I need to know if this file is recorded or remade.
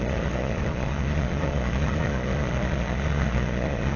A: remade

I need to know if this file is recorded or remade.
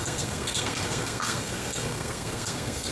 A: remade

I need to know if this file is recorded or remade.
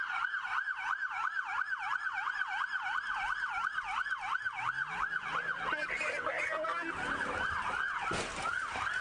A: recorded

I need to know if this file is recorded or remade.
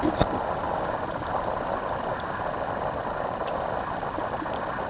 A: recorded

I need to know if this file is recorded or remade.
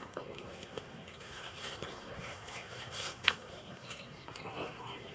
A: remade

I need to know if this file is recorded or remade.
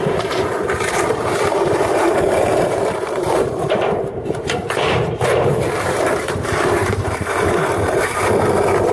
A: remade